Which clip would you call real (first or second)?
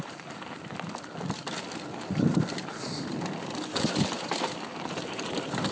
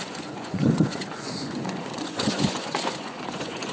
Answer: first